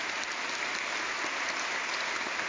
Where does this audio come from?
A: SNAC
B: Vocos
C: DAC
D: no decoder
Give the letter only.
D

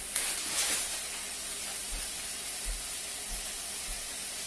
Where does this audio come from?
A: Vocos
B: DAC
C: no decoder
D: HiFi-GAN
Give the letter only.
C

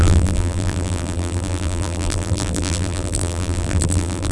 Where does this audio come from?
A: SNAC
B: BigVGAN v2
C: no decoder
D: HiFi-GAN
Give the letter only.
B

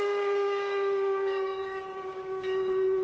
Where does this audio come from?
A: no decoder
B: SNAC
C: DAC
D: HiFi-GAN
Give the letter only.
C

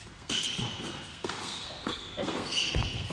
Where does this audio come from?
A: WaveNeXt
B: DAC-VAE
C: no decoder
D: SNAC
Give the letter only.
D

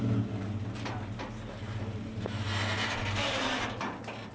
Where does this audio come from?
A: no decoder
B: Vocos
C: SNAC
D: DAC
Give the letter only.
A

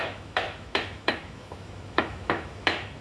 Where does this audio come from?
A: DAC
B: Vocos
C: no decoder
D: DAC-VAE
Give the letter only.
D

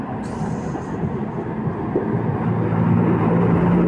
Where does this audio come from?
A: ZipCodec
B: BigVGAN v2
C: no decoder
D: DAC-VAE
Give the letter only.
C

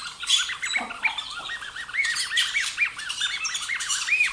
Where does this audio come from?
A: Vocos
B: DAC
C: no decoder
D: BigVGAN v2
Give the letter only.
D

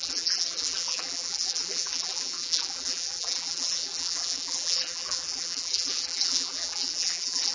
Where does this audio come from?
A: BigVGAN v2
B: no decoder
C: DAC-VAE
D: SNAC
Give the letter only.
A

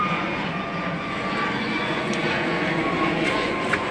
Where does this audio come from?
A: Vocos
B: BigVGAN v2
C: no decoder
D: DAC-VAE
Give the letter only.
A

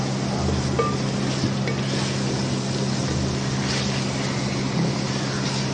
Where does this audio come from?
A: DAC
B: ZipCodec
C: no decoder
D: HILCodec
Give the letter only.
C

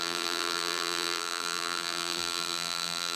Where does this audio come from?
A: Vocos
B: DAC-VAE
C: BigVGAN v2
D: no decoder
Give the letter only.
C